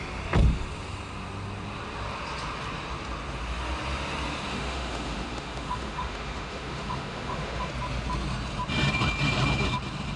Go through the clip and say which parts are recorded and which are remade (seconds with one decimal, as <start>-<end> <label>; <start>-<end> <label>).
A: 0.0-4.5 recorded; 4.5-7.7 remade; 7.7-10.2 recorded